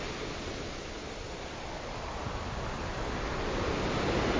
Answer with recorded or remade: recorded